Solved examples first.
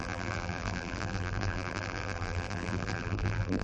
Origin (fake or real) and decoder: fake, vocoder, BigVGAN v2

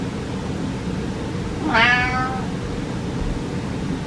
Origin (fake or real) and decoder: real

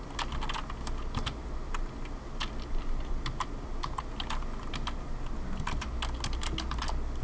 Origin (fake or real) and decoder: real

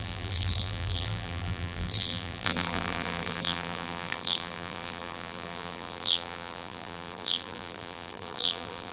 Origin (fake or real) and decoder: fake, vocoder, BigVGAN v2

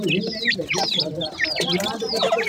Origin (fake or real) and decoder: real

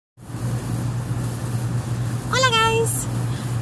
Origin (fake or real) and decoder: real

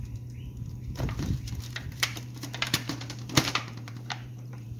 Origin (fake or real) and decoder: fake, vocoder, BigVGAN v2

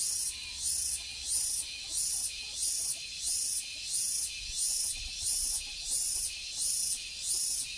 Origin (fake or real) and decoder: real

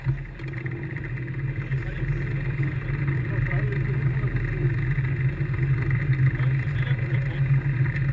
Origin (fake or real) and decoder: real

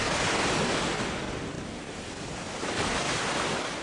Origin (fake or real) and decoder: real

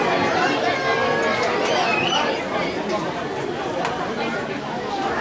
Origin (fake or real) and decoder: real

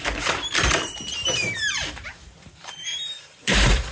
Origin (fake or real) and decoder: fake, vocoder, BigVGAN v2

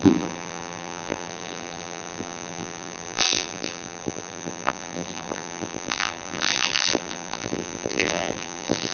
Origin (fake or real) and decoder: fake, vocoder, BigVGAN v2